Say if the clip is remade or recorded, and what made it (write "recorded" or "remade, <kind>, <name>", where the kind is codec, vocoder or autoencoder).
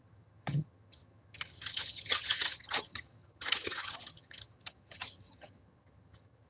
remade, vocoder, HiFi-GAN